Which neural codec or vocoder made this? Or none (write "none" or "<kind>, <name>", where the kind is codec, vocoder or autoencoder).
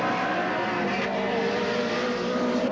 none